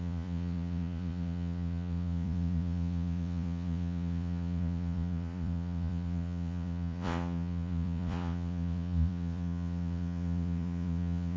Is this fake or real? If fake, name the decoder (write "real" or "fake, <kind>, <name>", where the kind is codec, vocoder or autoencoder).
fake, vocoder, Vocos